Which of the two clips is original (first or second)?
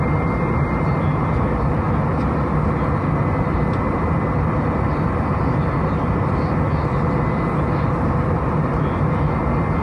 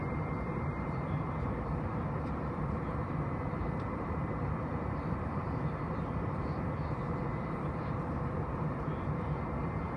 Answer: first